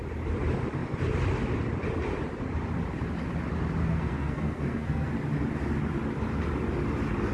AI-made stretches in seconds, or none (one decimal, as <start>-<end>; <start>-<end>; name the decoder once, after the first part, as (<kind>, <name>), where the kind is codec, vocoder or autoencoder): 3.8-5.1 (codec, SNAC)